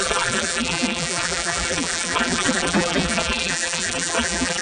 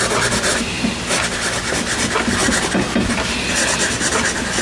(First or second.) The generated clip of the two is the first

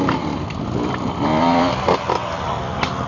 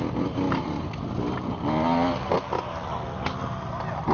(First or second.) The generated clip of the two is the first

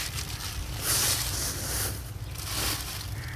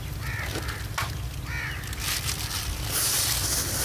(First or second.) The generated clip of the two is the first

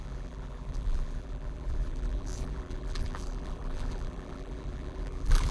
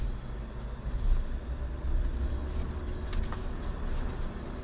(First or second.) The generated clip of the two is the first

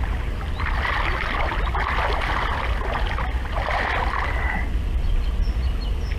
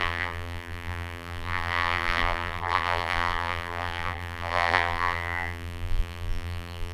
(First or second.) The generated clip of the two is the second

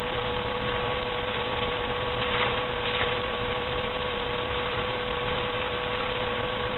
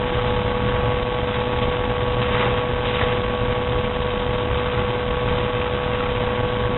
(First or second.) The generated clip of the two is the first